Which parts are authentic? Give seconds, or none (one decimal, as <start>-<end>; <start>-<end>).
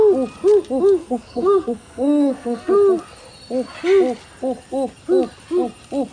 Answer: 0.0-1.0; 2.7-6.1